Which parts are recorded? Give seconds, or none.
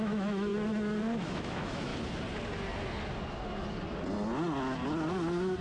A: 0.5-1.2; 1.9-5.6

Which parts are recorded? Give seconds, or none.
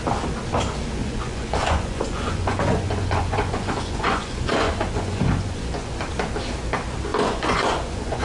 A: 0.0-1.0; 5.9-7.1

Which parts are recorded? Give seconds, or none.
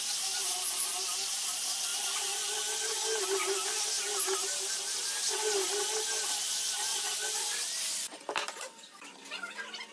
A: 0.0-9.9